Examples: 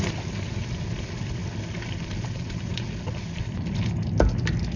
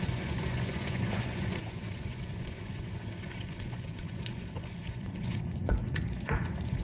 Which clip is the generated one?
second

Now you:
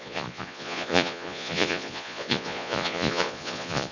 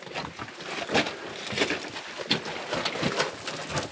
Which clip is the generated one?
first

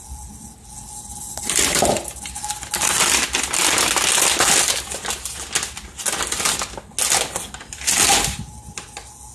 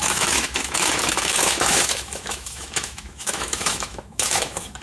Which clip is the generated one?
second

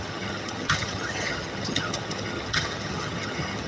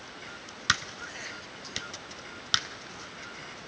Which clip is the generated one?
first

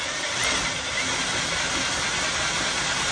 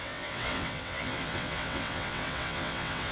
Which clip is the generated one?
second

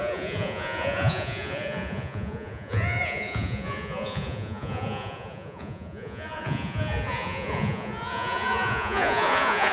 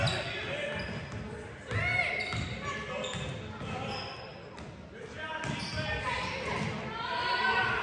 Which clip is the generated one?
first